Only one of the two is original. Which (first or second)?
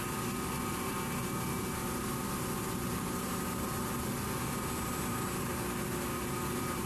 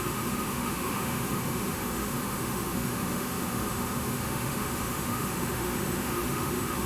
first